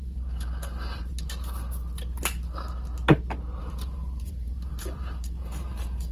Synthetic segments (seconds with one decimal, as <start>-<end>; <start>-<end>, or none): 0.0-1.1; 3.6-6.1